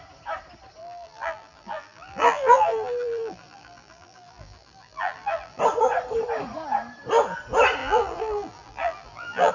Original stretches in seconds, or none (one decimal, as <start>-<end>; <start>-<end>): 0.0-0.8; 5.6-7.8